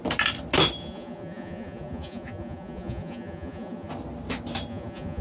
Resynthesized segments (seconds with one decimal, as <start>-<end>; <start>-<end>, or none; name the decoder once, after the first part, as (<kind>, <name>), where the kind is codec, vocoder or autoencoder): 0.8-3.9 (vocoder, Vocos); 4.7-5.2